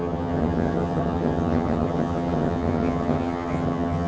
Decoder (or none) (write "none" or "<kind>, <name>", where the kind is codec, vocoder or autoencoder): vocoder, HiFi-GAN